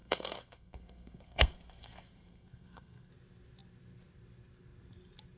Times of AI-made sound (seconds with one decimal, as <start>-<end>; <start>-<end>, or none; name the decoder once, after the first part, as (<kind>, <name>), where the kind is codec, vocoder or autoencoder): 0.0-3.1 (codec, SNAC)